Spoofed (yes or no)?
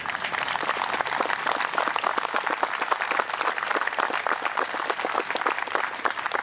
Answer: no